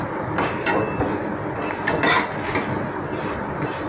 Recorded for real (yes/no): yes